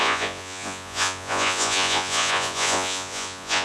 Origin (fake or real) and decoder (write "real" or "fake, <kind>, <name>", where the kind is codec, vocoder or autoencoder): fake, vocoder, Vocos